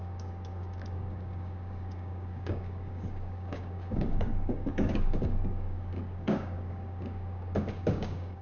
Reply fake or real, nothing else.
fake